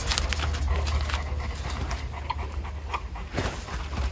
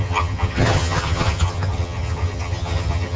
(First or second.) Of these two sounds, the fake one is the second